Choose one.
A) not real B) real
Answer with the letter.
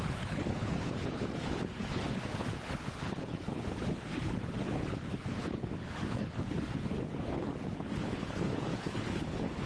A